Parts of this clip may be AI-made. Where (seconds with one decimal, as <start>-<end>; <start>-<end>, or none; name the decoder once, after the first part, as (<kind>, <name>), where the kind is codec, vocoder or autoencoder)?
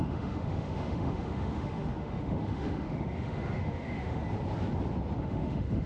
0.0-4.2 (autoencoder, DAC-VAE); 5.2-5.9